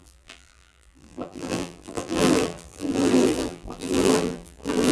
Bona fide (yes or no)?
no